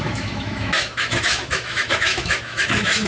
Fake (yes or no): yes